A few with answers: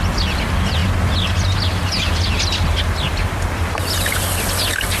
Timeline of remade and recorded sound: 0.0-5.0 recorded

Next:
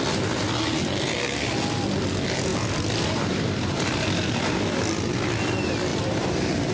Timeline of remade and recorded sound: 0.0-2.5 recorded; 2.5-5.1 remade; 5.1-5.9 recorded; 5.9-6.7 remade

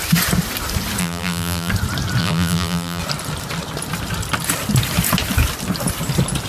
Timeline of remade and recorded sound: 0.0-1.0 recorded; 1.0-1.7 remade; 1.7-2.2 recorded; 2.2-3.0 remade; 3.0-6.5 recorded

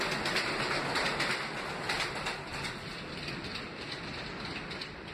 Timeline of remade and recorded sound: 0.0-5.1 recorded